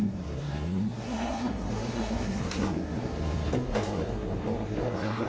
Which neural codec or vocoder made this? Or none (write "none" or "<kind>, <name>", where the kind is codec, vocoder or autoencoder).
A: codec, SNAC